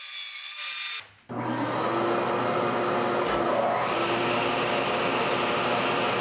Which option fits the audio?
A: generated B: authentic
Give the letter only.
B